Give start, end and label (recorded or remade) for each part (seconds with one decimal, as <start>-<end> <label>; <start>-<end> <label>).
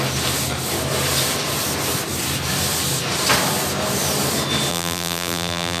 0.0-4.7 recorded; 4.7-5.8 remade